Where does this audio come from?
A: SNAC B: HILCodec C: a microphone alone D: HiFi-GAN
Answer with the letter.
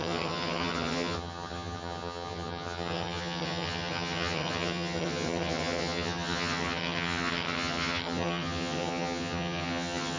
D